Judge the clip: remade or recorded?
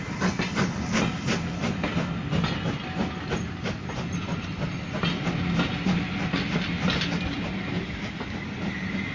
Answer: recorded